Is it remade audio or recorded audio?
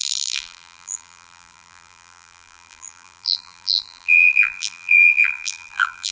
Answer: remade